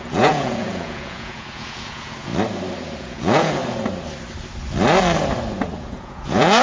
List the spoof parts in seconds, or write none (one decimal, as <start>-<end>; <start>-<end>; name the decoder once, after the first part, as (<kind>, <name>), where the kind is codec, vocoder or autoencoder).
0.0-2.3 (vocoder, Vocos); 3.0-3.6; 5.8-6.6